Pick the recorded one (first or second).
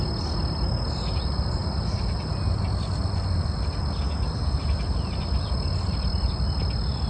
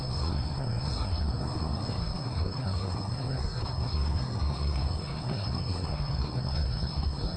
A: first